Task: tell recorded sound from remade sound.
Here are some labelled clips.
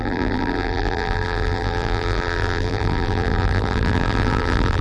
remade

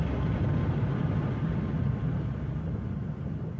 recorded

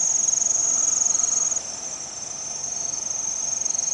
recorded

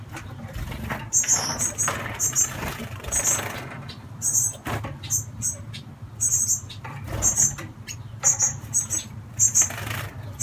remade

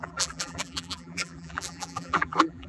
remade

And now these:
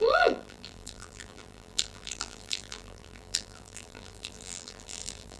remade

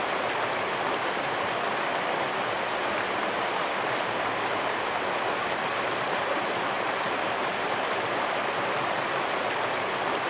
recorded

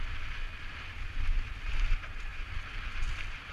recorded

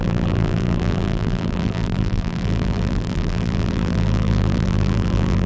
remade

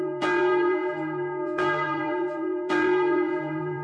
remade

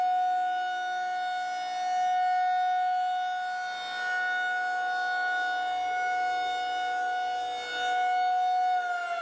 recorded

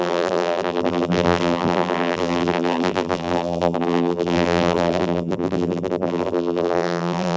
remade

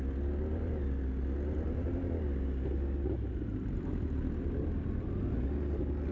recorded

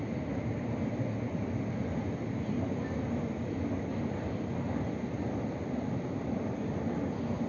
recorded